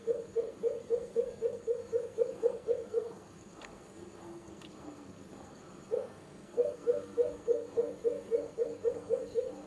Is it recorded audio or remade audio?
remade